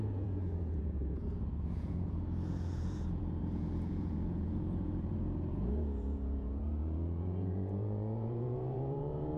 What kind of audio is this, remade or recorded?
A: remade